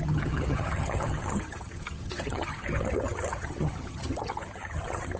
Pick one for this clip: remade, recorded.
remade